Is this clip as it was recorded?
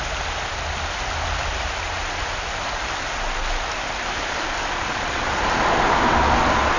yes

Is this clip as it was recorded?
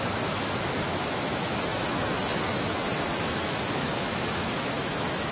no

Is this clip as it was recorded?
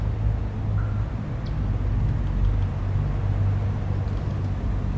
yes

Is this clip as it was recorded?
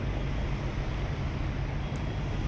yes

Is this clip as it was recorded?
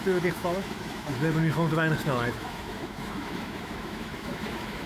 no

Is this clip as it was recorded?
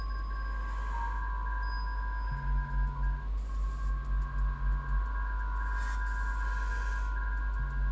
yes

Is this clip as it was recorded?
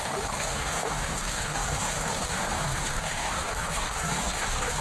no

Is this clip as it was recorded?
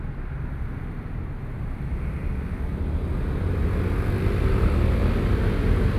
yes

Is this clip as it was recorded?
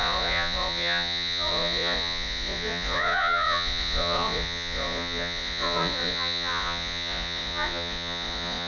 no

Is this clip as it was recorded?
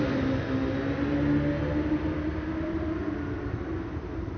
yes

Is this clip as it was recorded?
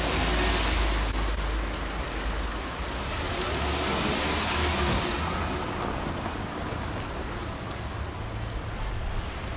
yes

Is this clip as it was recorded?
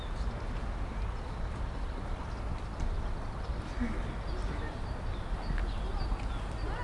yes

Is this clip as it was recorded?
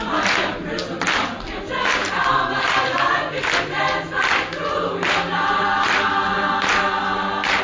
yes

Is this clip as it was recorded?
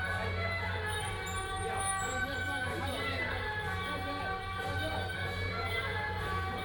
no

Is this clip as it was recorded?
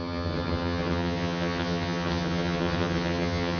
no